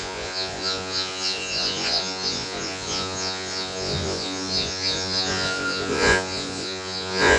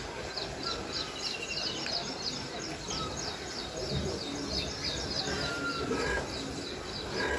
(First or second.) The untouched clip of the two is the second